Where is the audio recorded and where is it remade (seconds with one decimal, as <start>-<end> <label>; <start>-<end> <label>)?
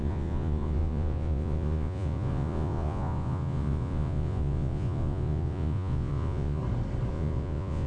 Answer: 0.0-6.6 remade; 6.6-7.1 recorded; 7.1-7.9 remade